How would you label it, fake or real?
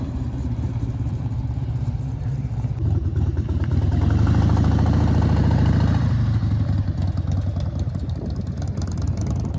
fake